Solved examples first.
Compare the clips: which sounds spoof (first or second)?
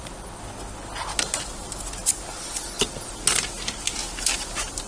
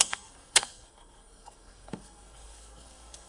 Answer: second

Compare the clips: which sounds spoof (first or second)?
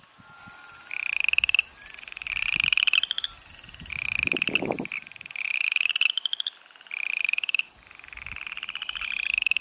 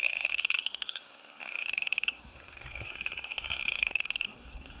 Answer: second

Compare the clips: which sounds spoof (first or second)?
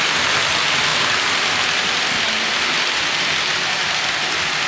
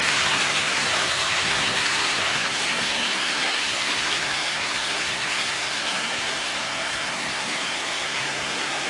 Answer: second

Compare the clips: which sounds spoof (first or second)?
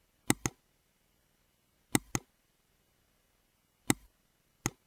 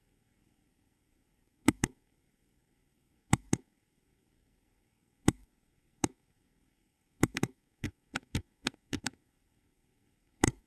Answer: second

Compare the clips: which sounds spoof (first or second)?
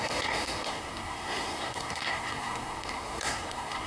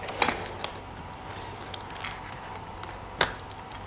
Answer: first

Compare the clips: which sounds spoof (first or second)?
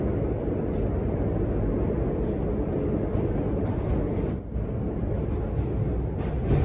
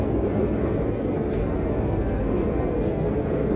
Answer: second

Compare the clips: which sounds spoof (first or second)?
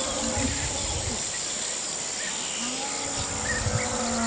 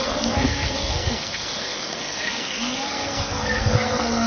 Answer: second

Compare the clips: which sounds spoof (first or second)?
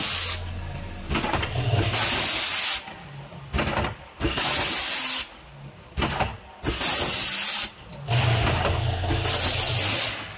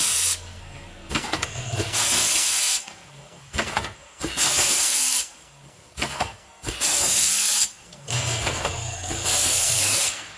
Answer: second